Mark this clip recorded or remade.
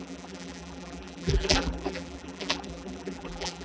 remade